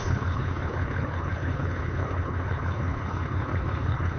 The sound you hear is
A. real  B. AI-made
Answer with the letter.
B